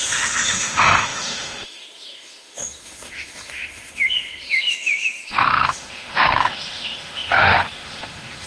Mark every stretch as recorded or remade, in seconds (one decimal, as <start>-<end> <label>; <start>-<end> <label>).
0.0-8.5 remade